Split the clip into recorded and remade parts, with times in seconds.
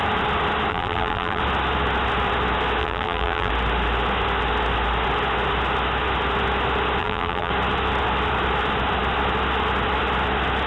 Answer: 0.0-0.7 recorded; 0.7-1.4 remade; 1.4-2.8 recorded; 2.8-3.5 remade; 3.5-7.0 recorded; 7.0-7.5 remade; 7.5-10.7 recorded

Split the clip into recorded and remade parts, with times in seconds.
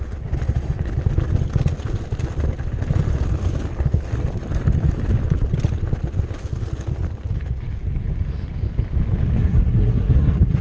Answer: 0.0-9.3 recorded; 9.3-10.6 remade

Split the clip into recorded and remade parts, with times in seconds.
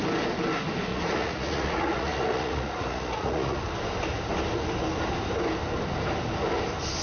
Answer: 0.0-0.9 recorded; 0.9-3.6 remade; 3.6-7.0 recorded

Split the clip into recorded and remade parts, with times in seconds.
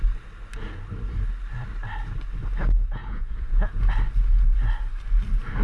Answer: 0.0-3.0 recorded; 3.0-3.8 remade; 3.8-5.6 recorded